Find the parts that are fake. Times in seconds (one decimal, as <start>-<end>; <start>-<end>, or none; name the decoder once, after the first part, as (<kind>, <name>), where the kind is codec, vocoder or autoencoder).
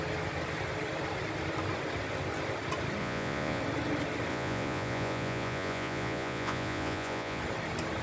3.0-3.6 (vocoder, Vocos); 4.3-7.4